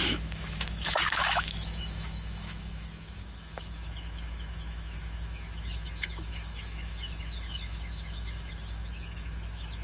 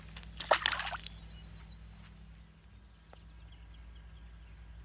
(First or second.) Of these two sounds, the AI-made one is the first